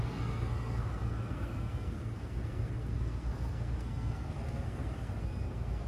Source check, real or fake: fake